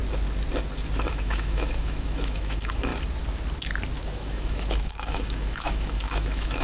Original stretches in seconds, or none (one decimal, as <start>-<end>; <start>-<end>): 0.0-1.1; 2.9-4.0